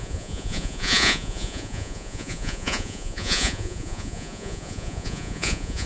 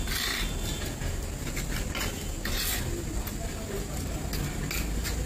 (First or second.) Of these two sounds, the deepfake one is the first